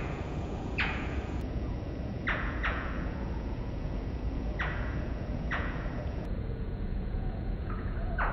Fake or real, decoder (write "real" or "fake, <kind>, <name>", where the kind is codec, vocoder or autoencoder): fake, vocoder, Vocos